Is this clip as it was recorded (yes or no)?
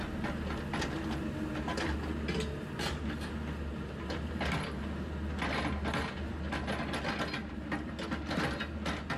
yes